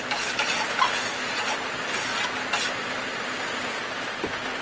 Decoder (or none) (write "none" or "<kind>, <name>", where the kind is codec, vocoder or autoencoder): none